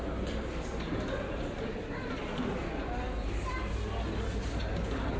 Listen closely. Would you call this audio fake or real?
real